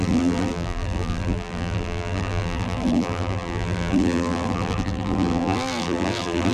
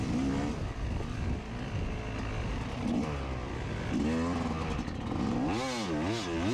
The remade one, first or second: first